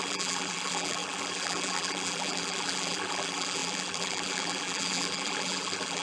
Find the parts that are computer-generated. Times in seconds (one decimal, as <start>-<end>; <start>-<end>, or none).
0.0-6.0